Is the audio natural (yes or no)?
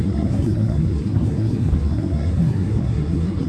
no